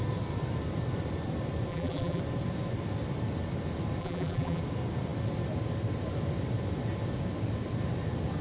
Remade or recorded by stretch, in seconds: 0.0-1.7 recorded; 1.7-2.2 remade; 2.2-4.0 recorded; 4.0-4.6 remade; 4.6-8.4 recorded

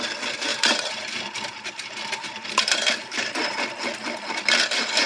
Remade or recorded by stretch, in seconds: 0.0-0.5 recorded; 0.5-3.6 remade; 3.6-5.1 recorded

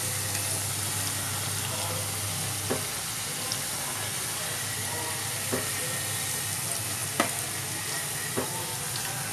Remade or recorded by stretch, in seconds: 0.0-9.3 recorded

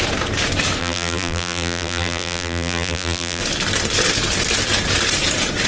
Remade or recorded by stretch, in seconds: 0.0-0.8 recorded; 0.8-3.4 remade; 3.4-5.7 recorded

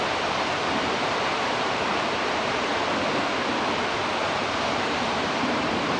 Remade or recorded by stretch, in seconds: 0.0-2.7 remade; 2.7-4.2 recorded; 4.2-6.0 remade

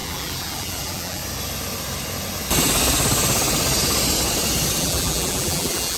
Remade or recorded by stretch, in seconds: 0.0-1.2 remade; 1.2-4.8 recorded; 4.8-6.0 remade